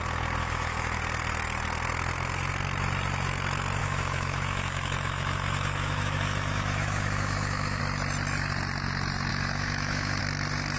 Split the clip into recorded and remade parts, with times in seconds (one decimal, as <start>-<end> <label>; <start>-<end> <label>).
0.0-0.4 recorded; 0.4-1.0 remade; 1.0-3.8 recorded; 3.8-7.8 remade; 7.8-9.3 recorded; 9.3-10.2 remade; 10.2-10.8 recorded